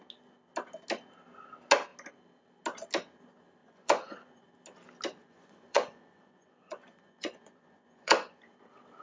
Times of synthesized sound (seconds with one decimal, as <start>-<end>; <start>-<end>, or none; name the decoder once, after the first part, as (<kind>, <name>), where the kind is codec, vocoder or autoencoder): 3.6-4.4 (vocoder, Vocos); 5.2-8.5